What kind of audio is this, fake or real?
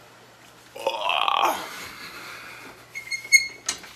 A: real